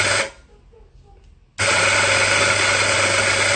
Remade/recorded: recorded